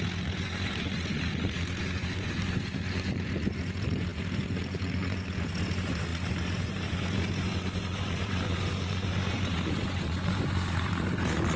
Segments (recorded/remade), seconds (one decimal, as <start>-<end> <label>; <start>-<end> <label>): 0.0-11.6 remade